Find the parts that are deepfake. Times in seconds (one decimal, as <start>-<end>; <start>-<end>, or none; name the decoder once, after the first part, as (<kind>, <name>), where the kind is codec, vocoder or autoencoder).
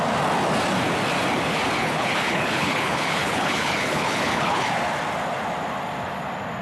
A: 1.8-4.7 (codec, HILCodec)